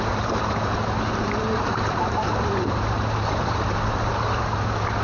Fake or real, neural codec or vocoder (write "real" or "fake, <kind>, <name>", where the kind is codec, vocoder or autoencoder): fake, vocoder, BigVGAN v2